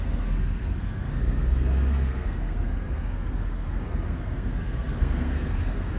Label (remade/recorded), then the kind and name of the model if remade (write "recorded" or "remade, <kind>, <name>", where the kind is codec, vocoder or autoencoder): remade, codec, SNAC